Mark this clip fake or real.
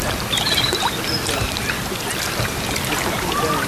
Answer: real